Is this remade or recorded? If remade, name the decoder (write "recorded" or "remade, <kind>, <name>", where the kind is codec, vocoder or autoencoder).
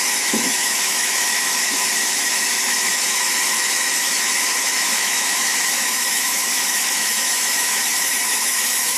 remade, autoencoder, DAC-VAE